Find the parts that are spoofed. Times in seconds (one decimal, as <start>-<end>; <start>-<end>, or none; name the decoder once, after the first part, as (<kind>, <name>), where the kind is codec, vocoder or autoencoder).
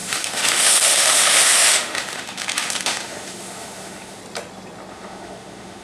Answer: 0.0-4.2 (autoencoder, DAC-VAE); 4.9-5.8